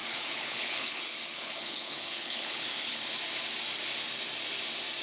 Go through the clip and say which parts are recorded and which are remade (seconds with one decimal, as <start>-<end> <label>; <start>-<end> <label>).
0.0-3.0 remade; 3.0-5.0 recorded